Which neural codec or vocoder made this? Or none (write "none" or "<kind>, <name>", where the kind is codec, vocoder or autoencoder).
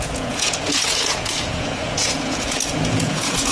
vocoder, Vocos